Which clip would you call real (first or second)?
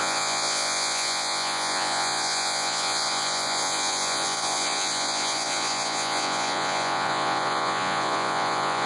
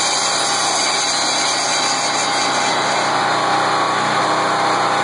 second